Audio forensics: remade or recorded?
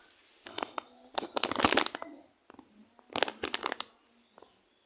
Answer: recorded